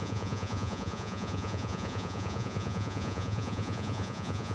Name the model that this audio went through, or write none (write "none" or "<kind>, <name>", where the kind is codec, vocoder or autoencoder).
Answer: vocoder, Vocos